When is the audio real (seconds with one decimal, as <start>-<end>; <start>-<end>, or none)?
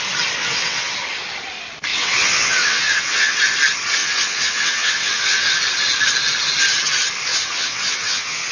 0.0-0.4; 0.9-1.9; 3.4-4.0; 5.6-7.3